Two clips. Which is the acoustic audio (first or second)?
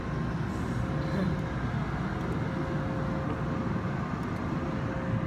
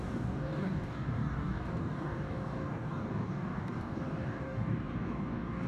first